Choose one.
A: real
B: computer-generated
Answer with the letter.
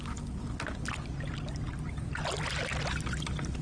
A